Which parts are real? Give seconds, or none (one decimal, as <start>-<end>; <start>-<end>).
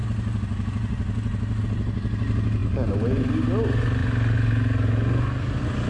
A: 0.0-5.9